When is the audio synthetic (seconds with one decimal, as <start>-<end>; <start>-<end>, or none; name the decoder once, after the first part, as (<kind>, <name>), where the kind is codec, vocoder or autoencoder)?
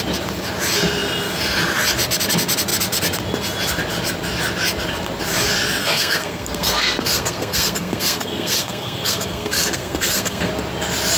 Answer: 5.8-10.5 (codec, SNAC)